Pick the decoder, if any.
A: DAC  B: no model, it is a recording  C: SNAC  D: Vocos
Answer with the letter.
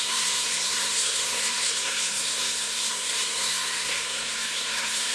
C